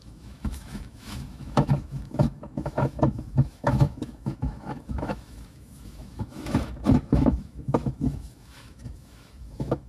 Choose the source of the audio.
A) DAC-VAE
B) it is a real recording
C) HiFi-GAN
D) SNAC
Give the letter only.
A